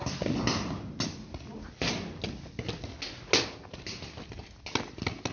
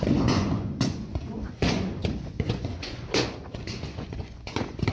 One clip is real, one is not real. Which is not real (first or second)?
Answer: second